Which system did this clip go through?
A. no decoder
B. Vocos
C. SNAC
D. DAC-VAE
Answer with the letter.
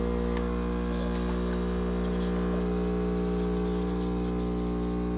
A